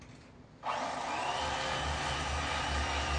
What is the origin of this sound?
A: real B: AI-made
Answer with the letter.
A